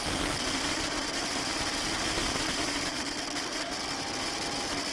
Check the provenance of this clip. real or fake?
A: fake